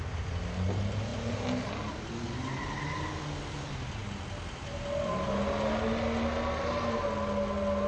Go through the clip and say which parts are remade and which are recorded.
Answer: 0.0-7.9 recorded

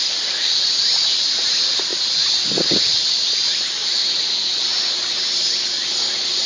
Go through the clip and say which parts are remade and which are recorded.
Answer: 0.0-4.0 recorded; 4.0-4.6 remade; 4.6-6.5 recorded

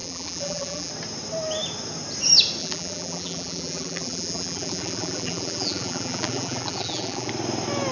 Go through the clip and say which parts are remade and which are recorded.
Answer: 0.0-0.9 remade; 0.9-2.6 recorded; 2.6-7.3 remade; 7.3-7.9 recorded